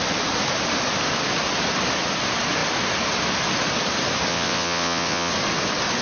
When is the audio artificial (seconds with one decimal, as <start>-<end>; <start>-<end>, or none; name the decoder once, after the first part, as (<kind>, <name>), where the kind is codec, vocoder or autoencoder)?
4.3-5.3 (vocoder, WaveNeXt)